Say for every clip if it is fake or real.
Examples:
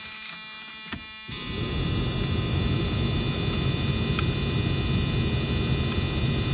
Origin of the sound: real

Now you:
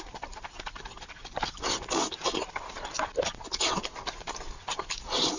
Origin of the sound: real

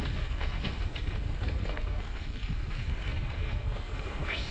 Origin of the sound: fake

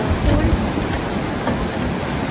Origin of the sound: real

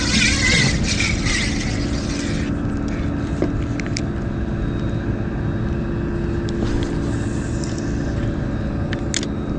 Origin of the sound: real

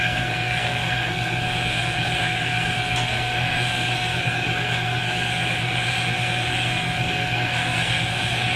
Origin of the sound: fake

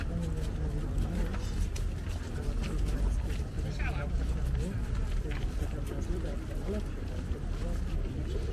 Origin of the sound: real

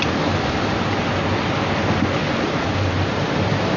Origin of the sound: real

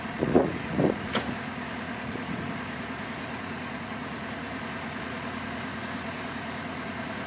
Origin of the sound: fake